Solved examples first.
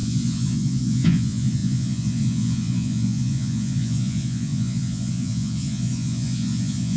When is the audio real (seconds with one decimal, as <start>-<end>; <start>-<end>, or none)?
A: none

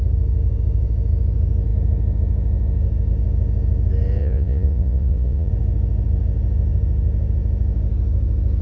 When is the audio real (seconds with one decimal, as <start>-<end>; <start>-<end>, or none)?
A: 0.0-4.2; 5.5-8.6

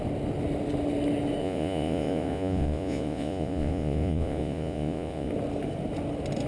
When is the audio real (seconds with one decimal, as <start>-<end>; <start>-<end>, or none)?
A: 0.0-1.4; 5.3-6.5